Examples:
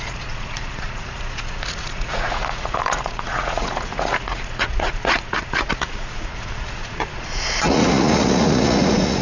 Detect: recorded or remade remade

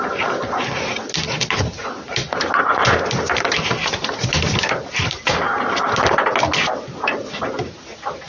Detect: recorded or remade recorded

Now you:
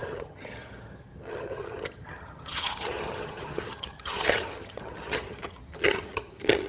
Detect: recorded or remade remade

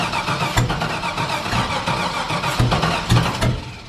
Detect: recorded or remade recorded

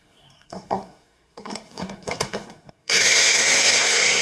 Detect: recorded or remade remade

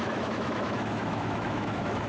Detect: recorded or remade remade